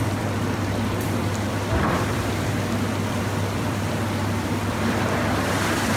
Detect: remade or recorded remade